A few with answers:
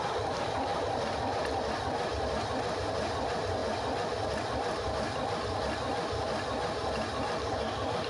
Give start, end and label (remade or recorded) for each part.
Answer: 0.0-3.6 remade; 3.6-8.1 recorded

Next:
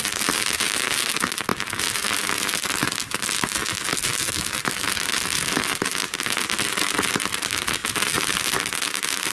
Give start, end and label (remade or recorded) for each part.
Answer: 0.0-9.3 recorded

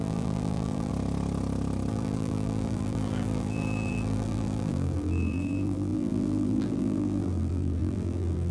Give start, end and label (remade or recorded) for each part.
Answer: 0.0-0.9 remade; 0.9-1.9 recorded; 1.9-8.5 remade

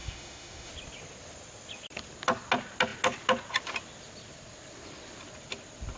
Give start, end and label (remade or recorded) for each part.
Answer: 0.0-0.7 remade; 0.7-6.0 recorded

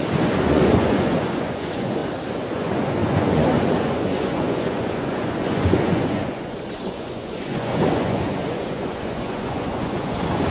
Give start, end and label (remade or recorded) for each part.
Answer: 0.0-2.0 remade; 2.0-2.5 recorded; 2.5-10.5 remade

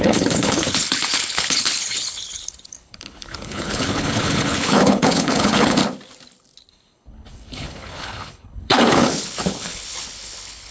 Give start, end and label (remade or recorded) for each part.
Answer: 0.0-5.8 remade; 5.8-6.7 recorded; 6.7-10.7 remade

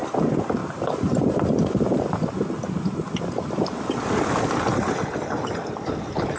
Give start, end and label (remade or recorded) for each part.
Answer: 0.0-0.6 recorded; 0.6-4.4 remade; 4.4-6.4 recorded